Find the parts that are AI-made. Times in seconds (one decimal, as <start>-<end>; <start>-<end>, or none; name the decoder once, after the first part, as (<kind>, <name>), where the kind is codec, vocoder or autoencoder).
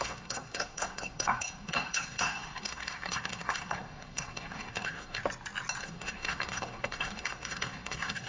0.0-5.2 (codec, SNAC); 5.8-8.3